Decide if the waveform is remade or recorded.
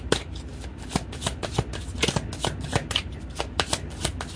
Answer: recorded